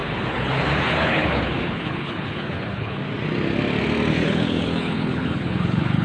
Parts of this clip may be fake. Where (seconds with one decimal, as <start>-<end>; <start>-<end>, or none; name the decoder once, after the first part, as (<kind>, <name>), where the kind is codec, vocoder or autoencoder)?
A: 0.0-3.0 (codec, HILCodec); 4.1-6.0